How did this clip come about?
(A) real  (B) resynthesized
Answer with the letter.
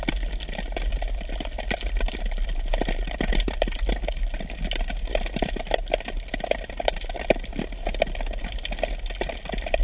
A